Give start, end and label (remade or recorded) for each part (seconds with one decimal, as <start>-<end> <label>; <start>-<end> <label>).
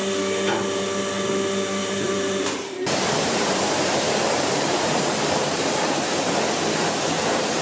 0.0-1.8 recorded; 1.8-6.3 remade; 6.3-7.6 recorded